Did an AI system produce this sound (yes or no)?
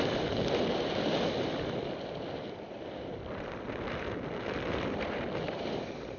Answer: yes